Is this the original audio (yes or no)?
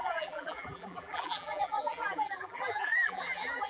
no